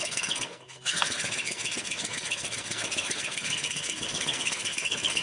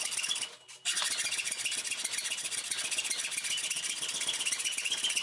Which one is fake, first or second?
first